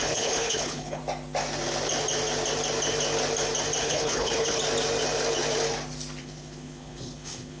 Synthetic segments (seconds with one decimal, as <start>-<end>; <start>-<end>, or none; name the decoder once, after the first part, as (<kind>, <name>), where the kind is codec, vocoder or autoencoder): 0.0-1.0 (codec, HILCodec); 3.8-4.6; 6.2-7.6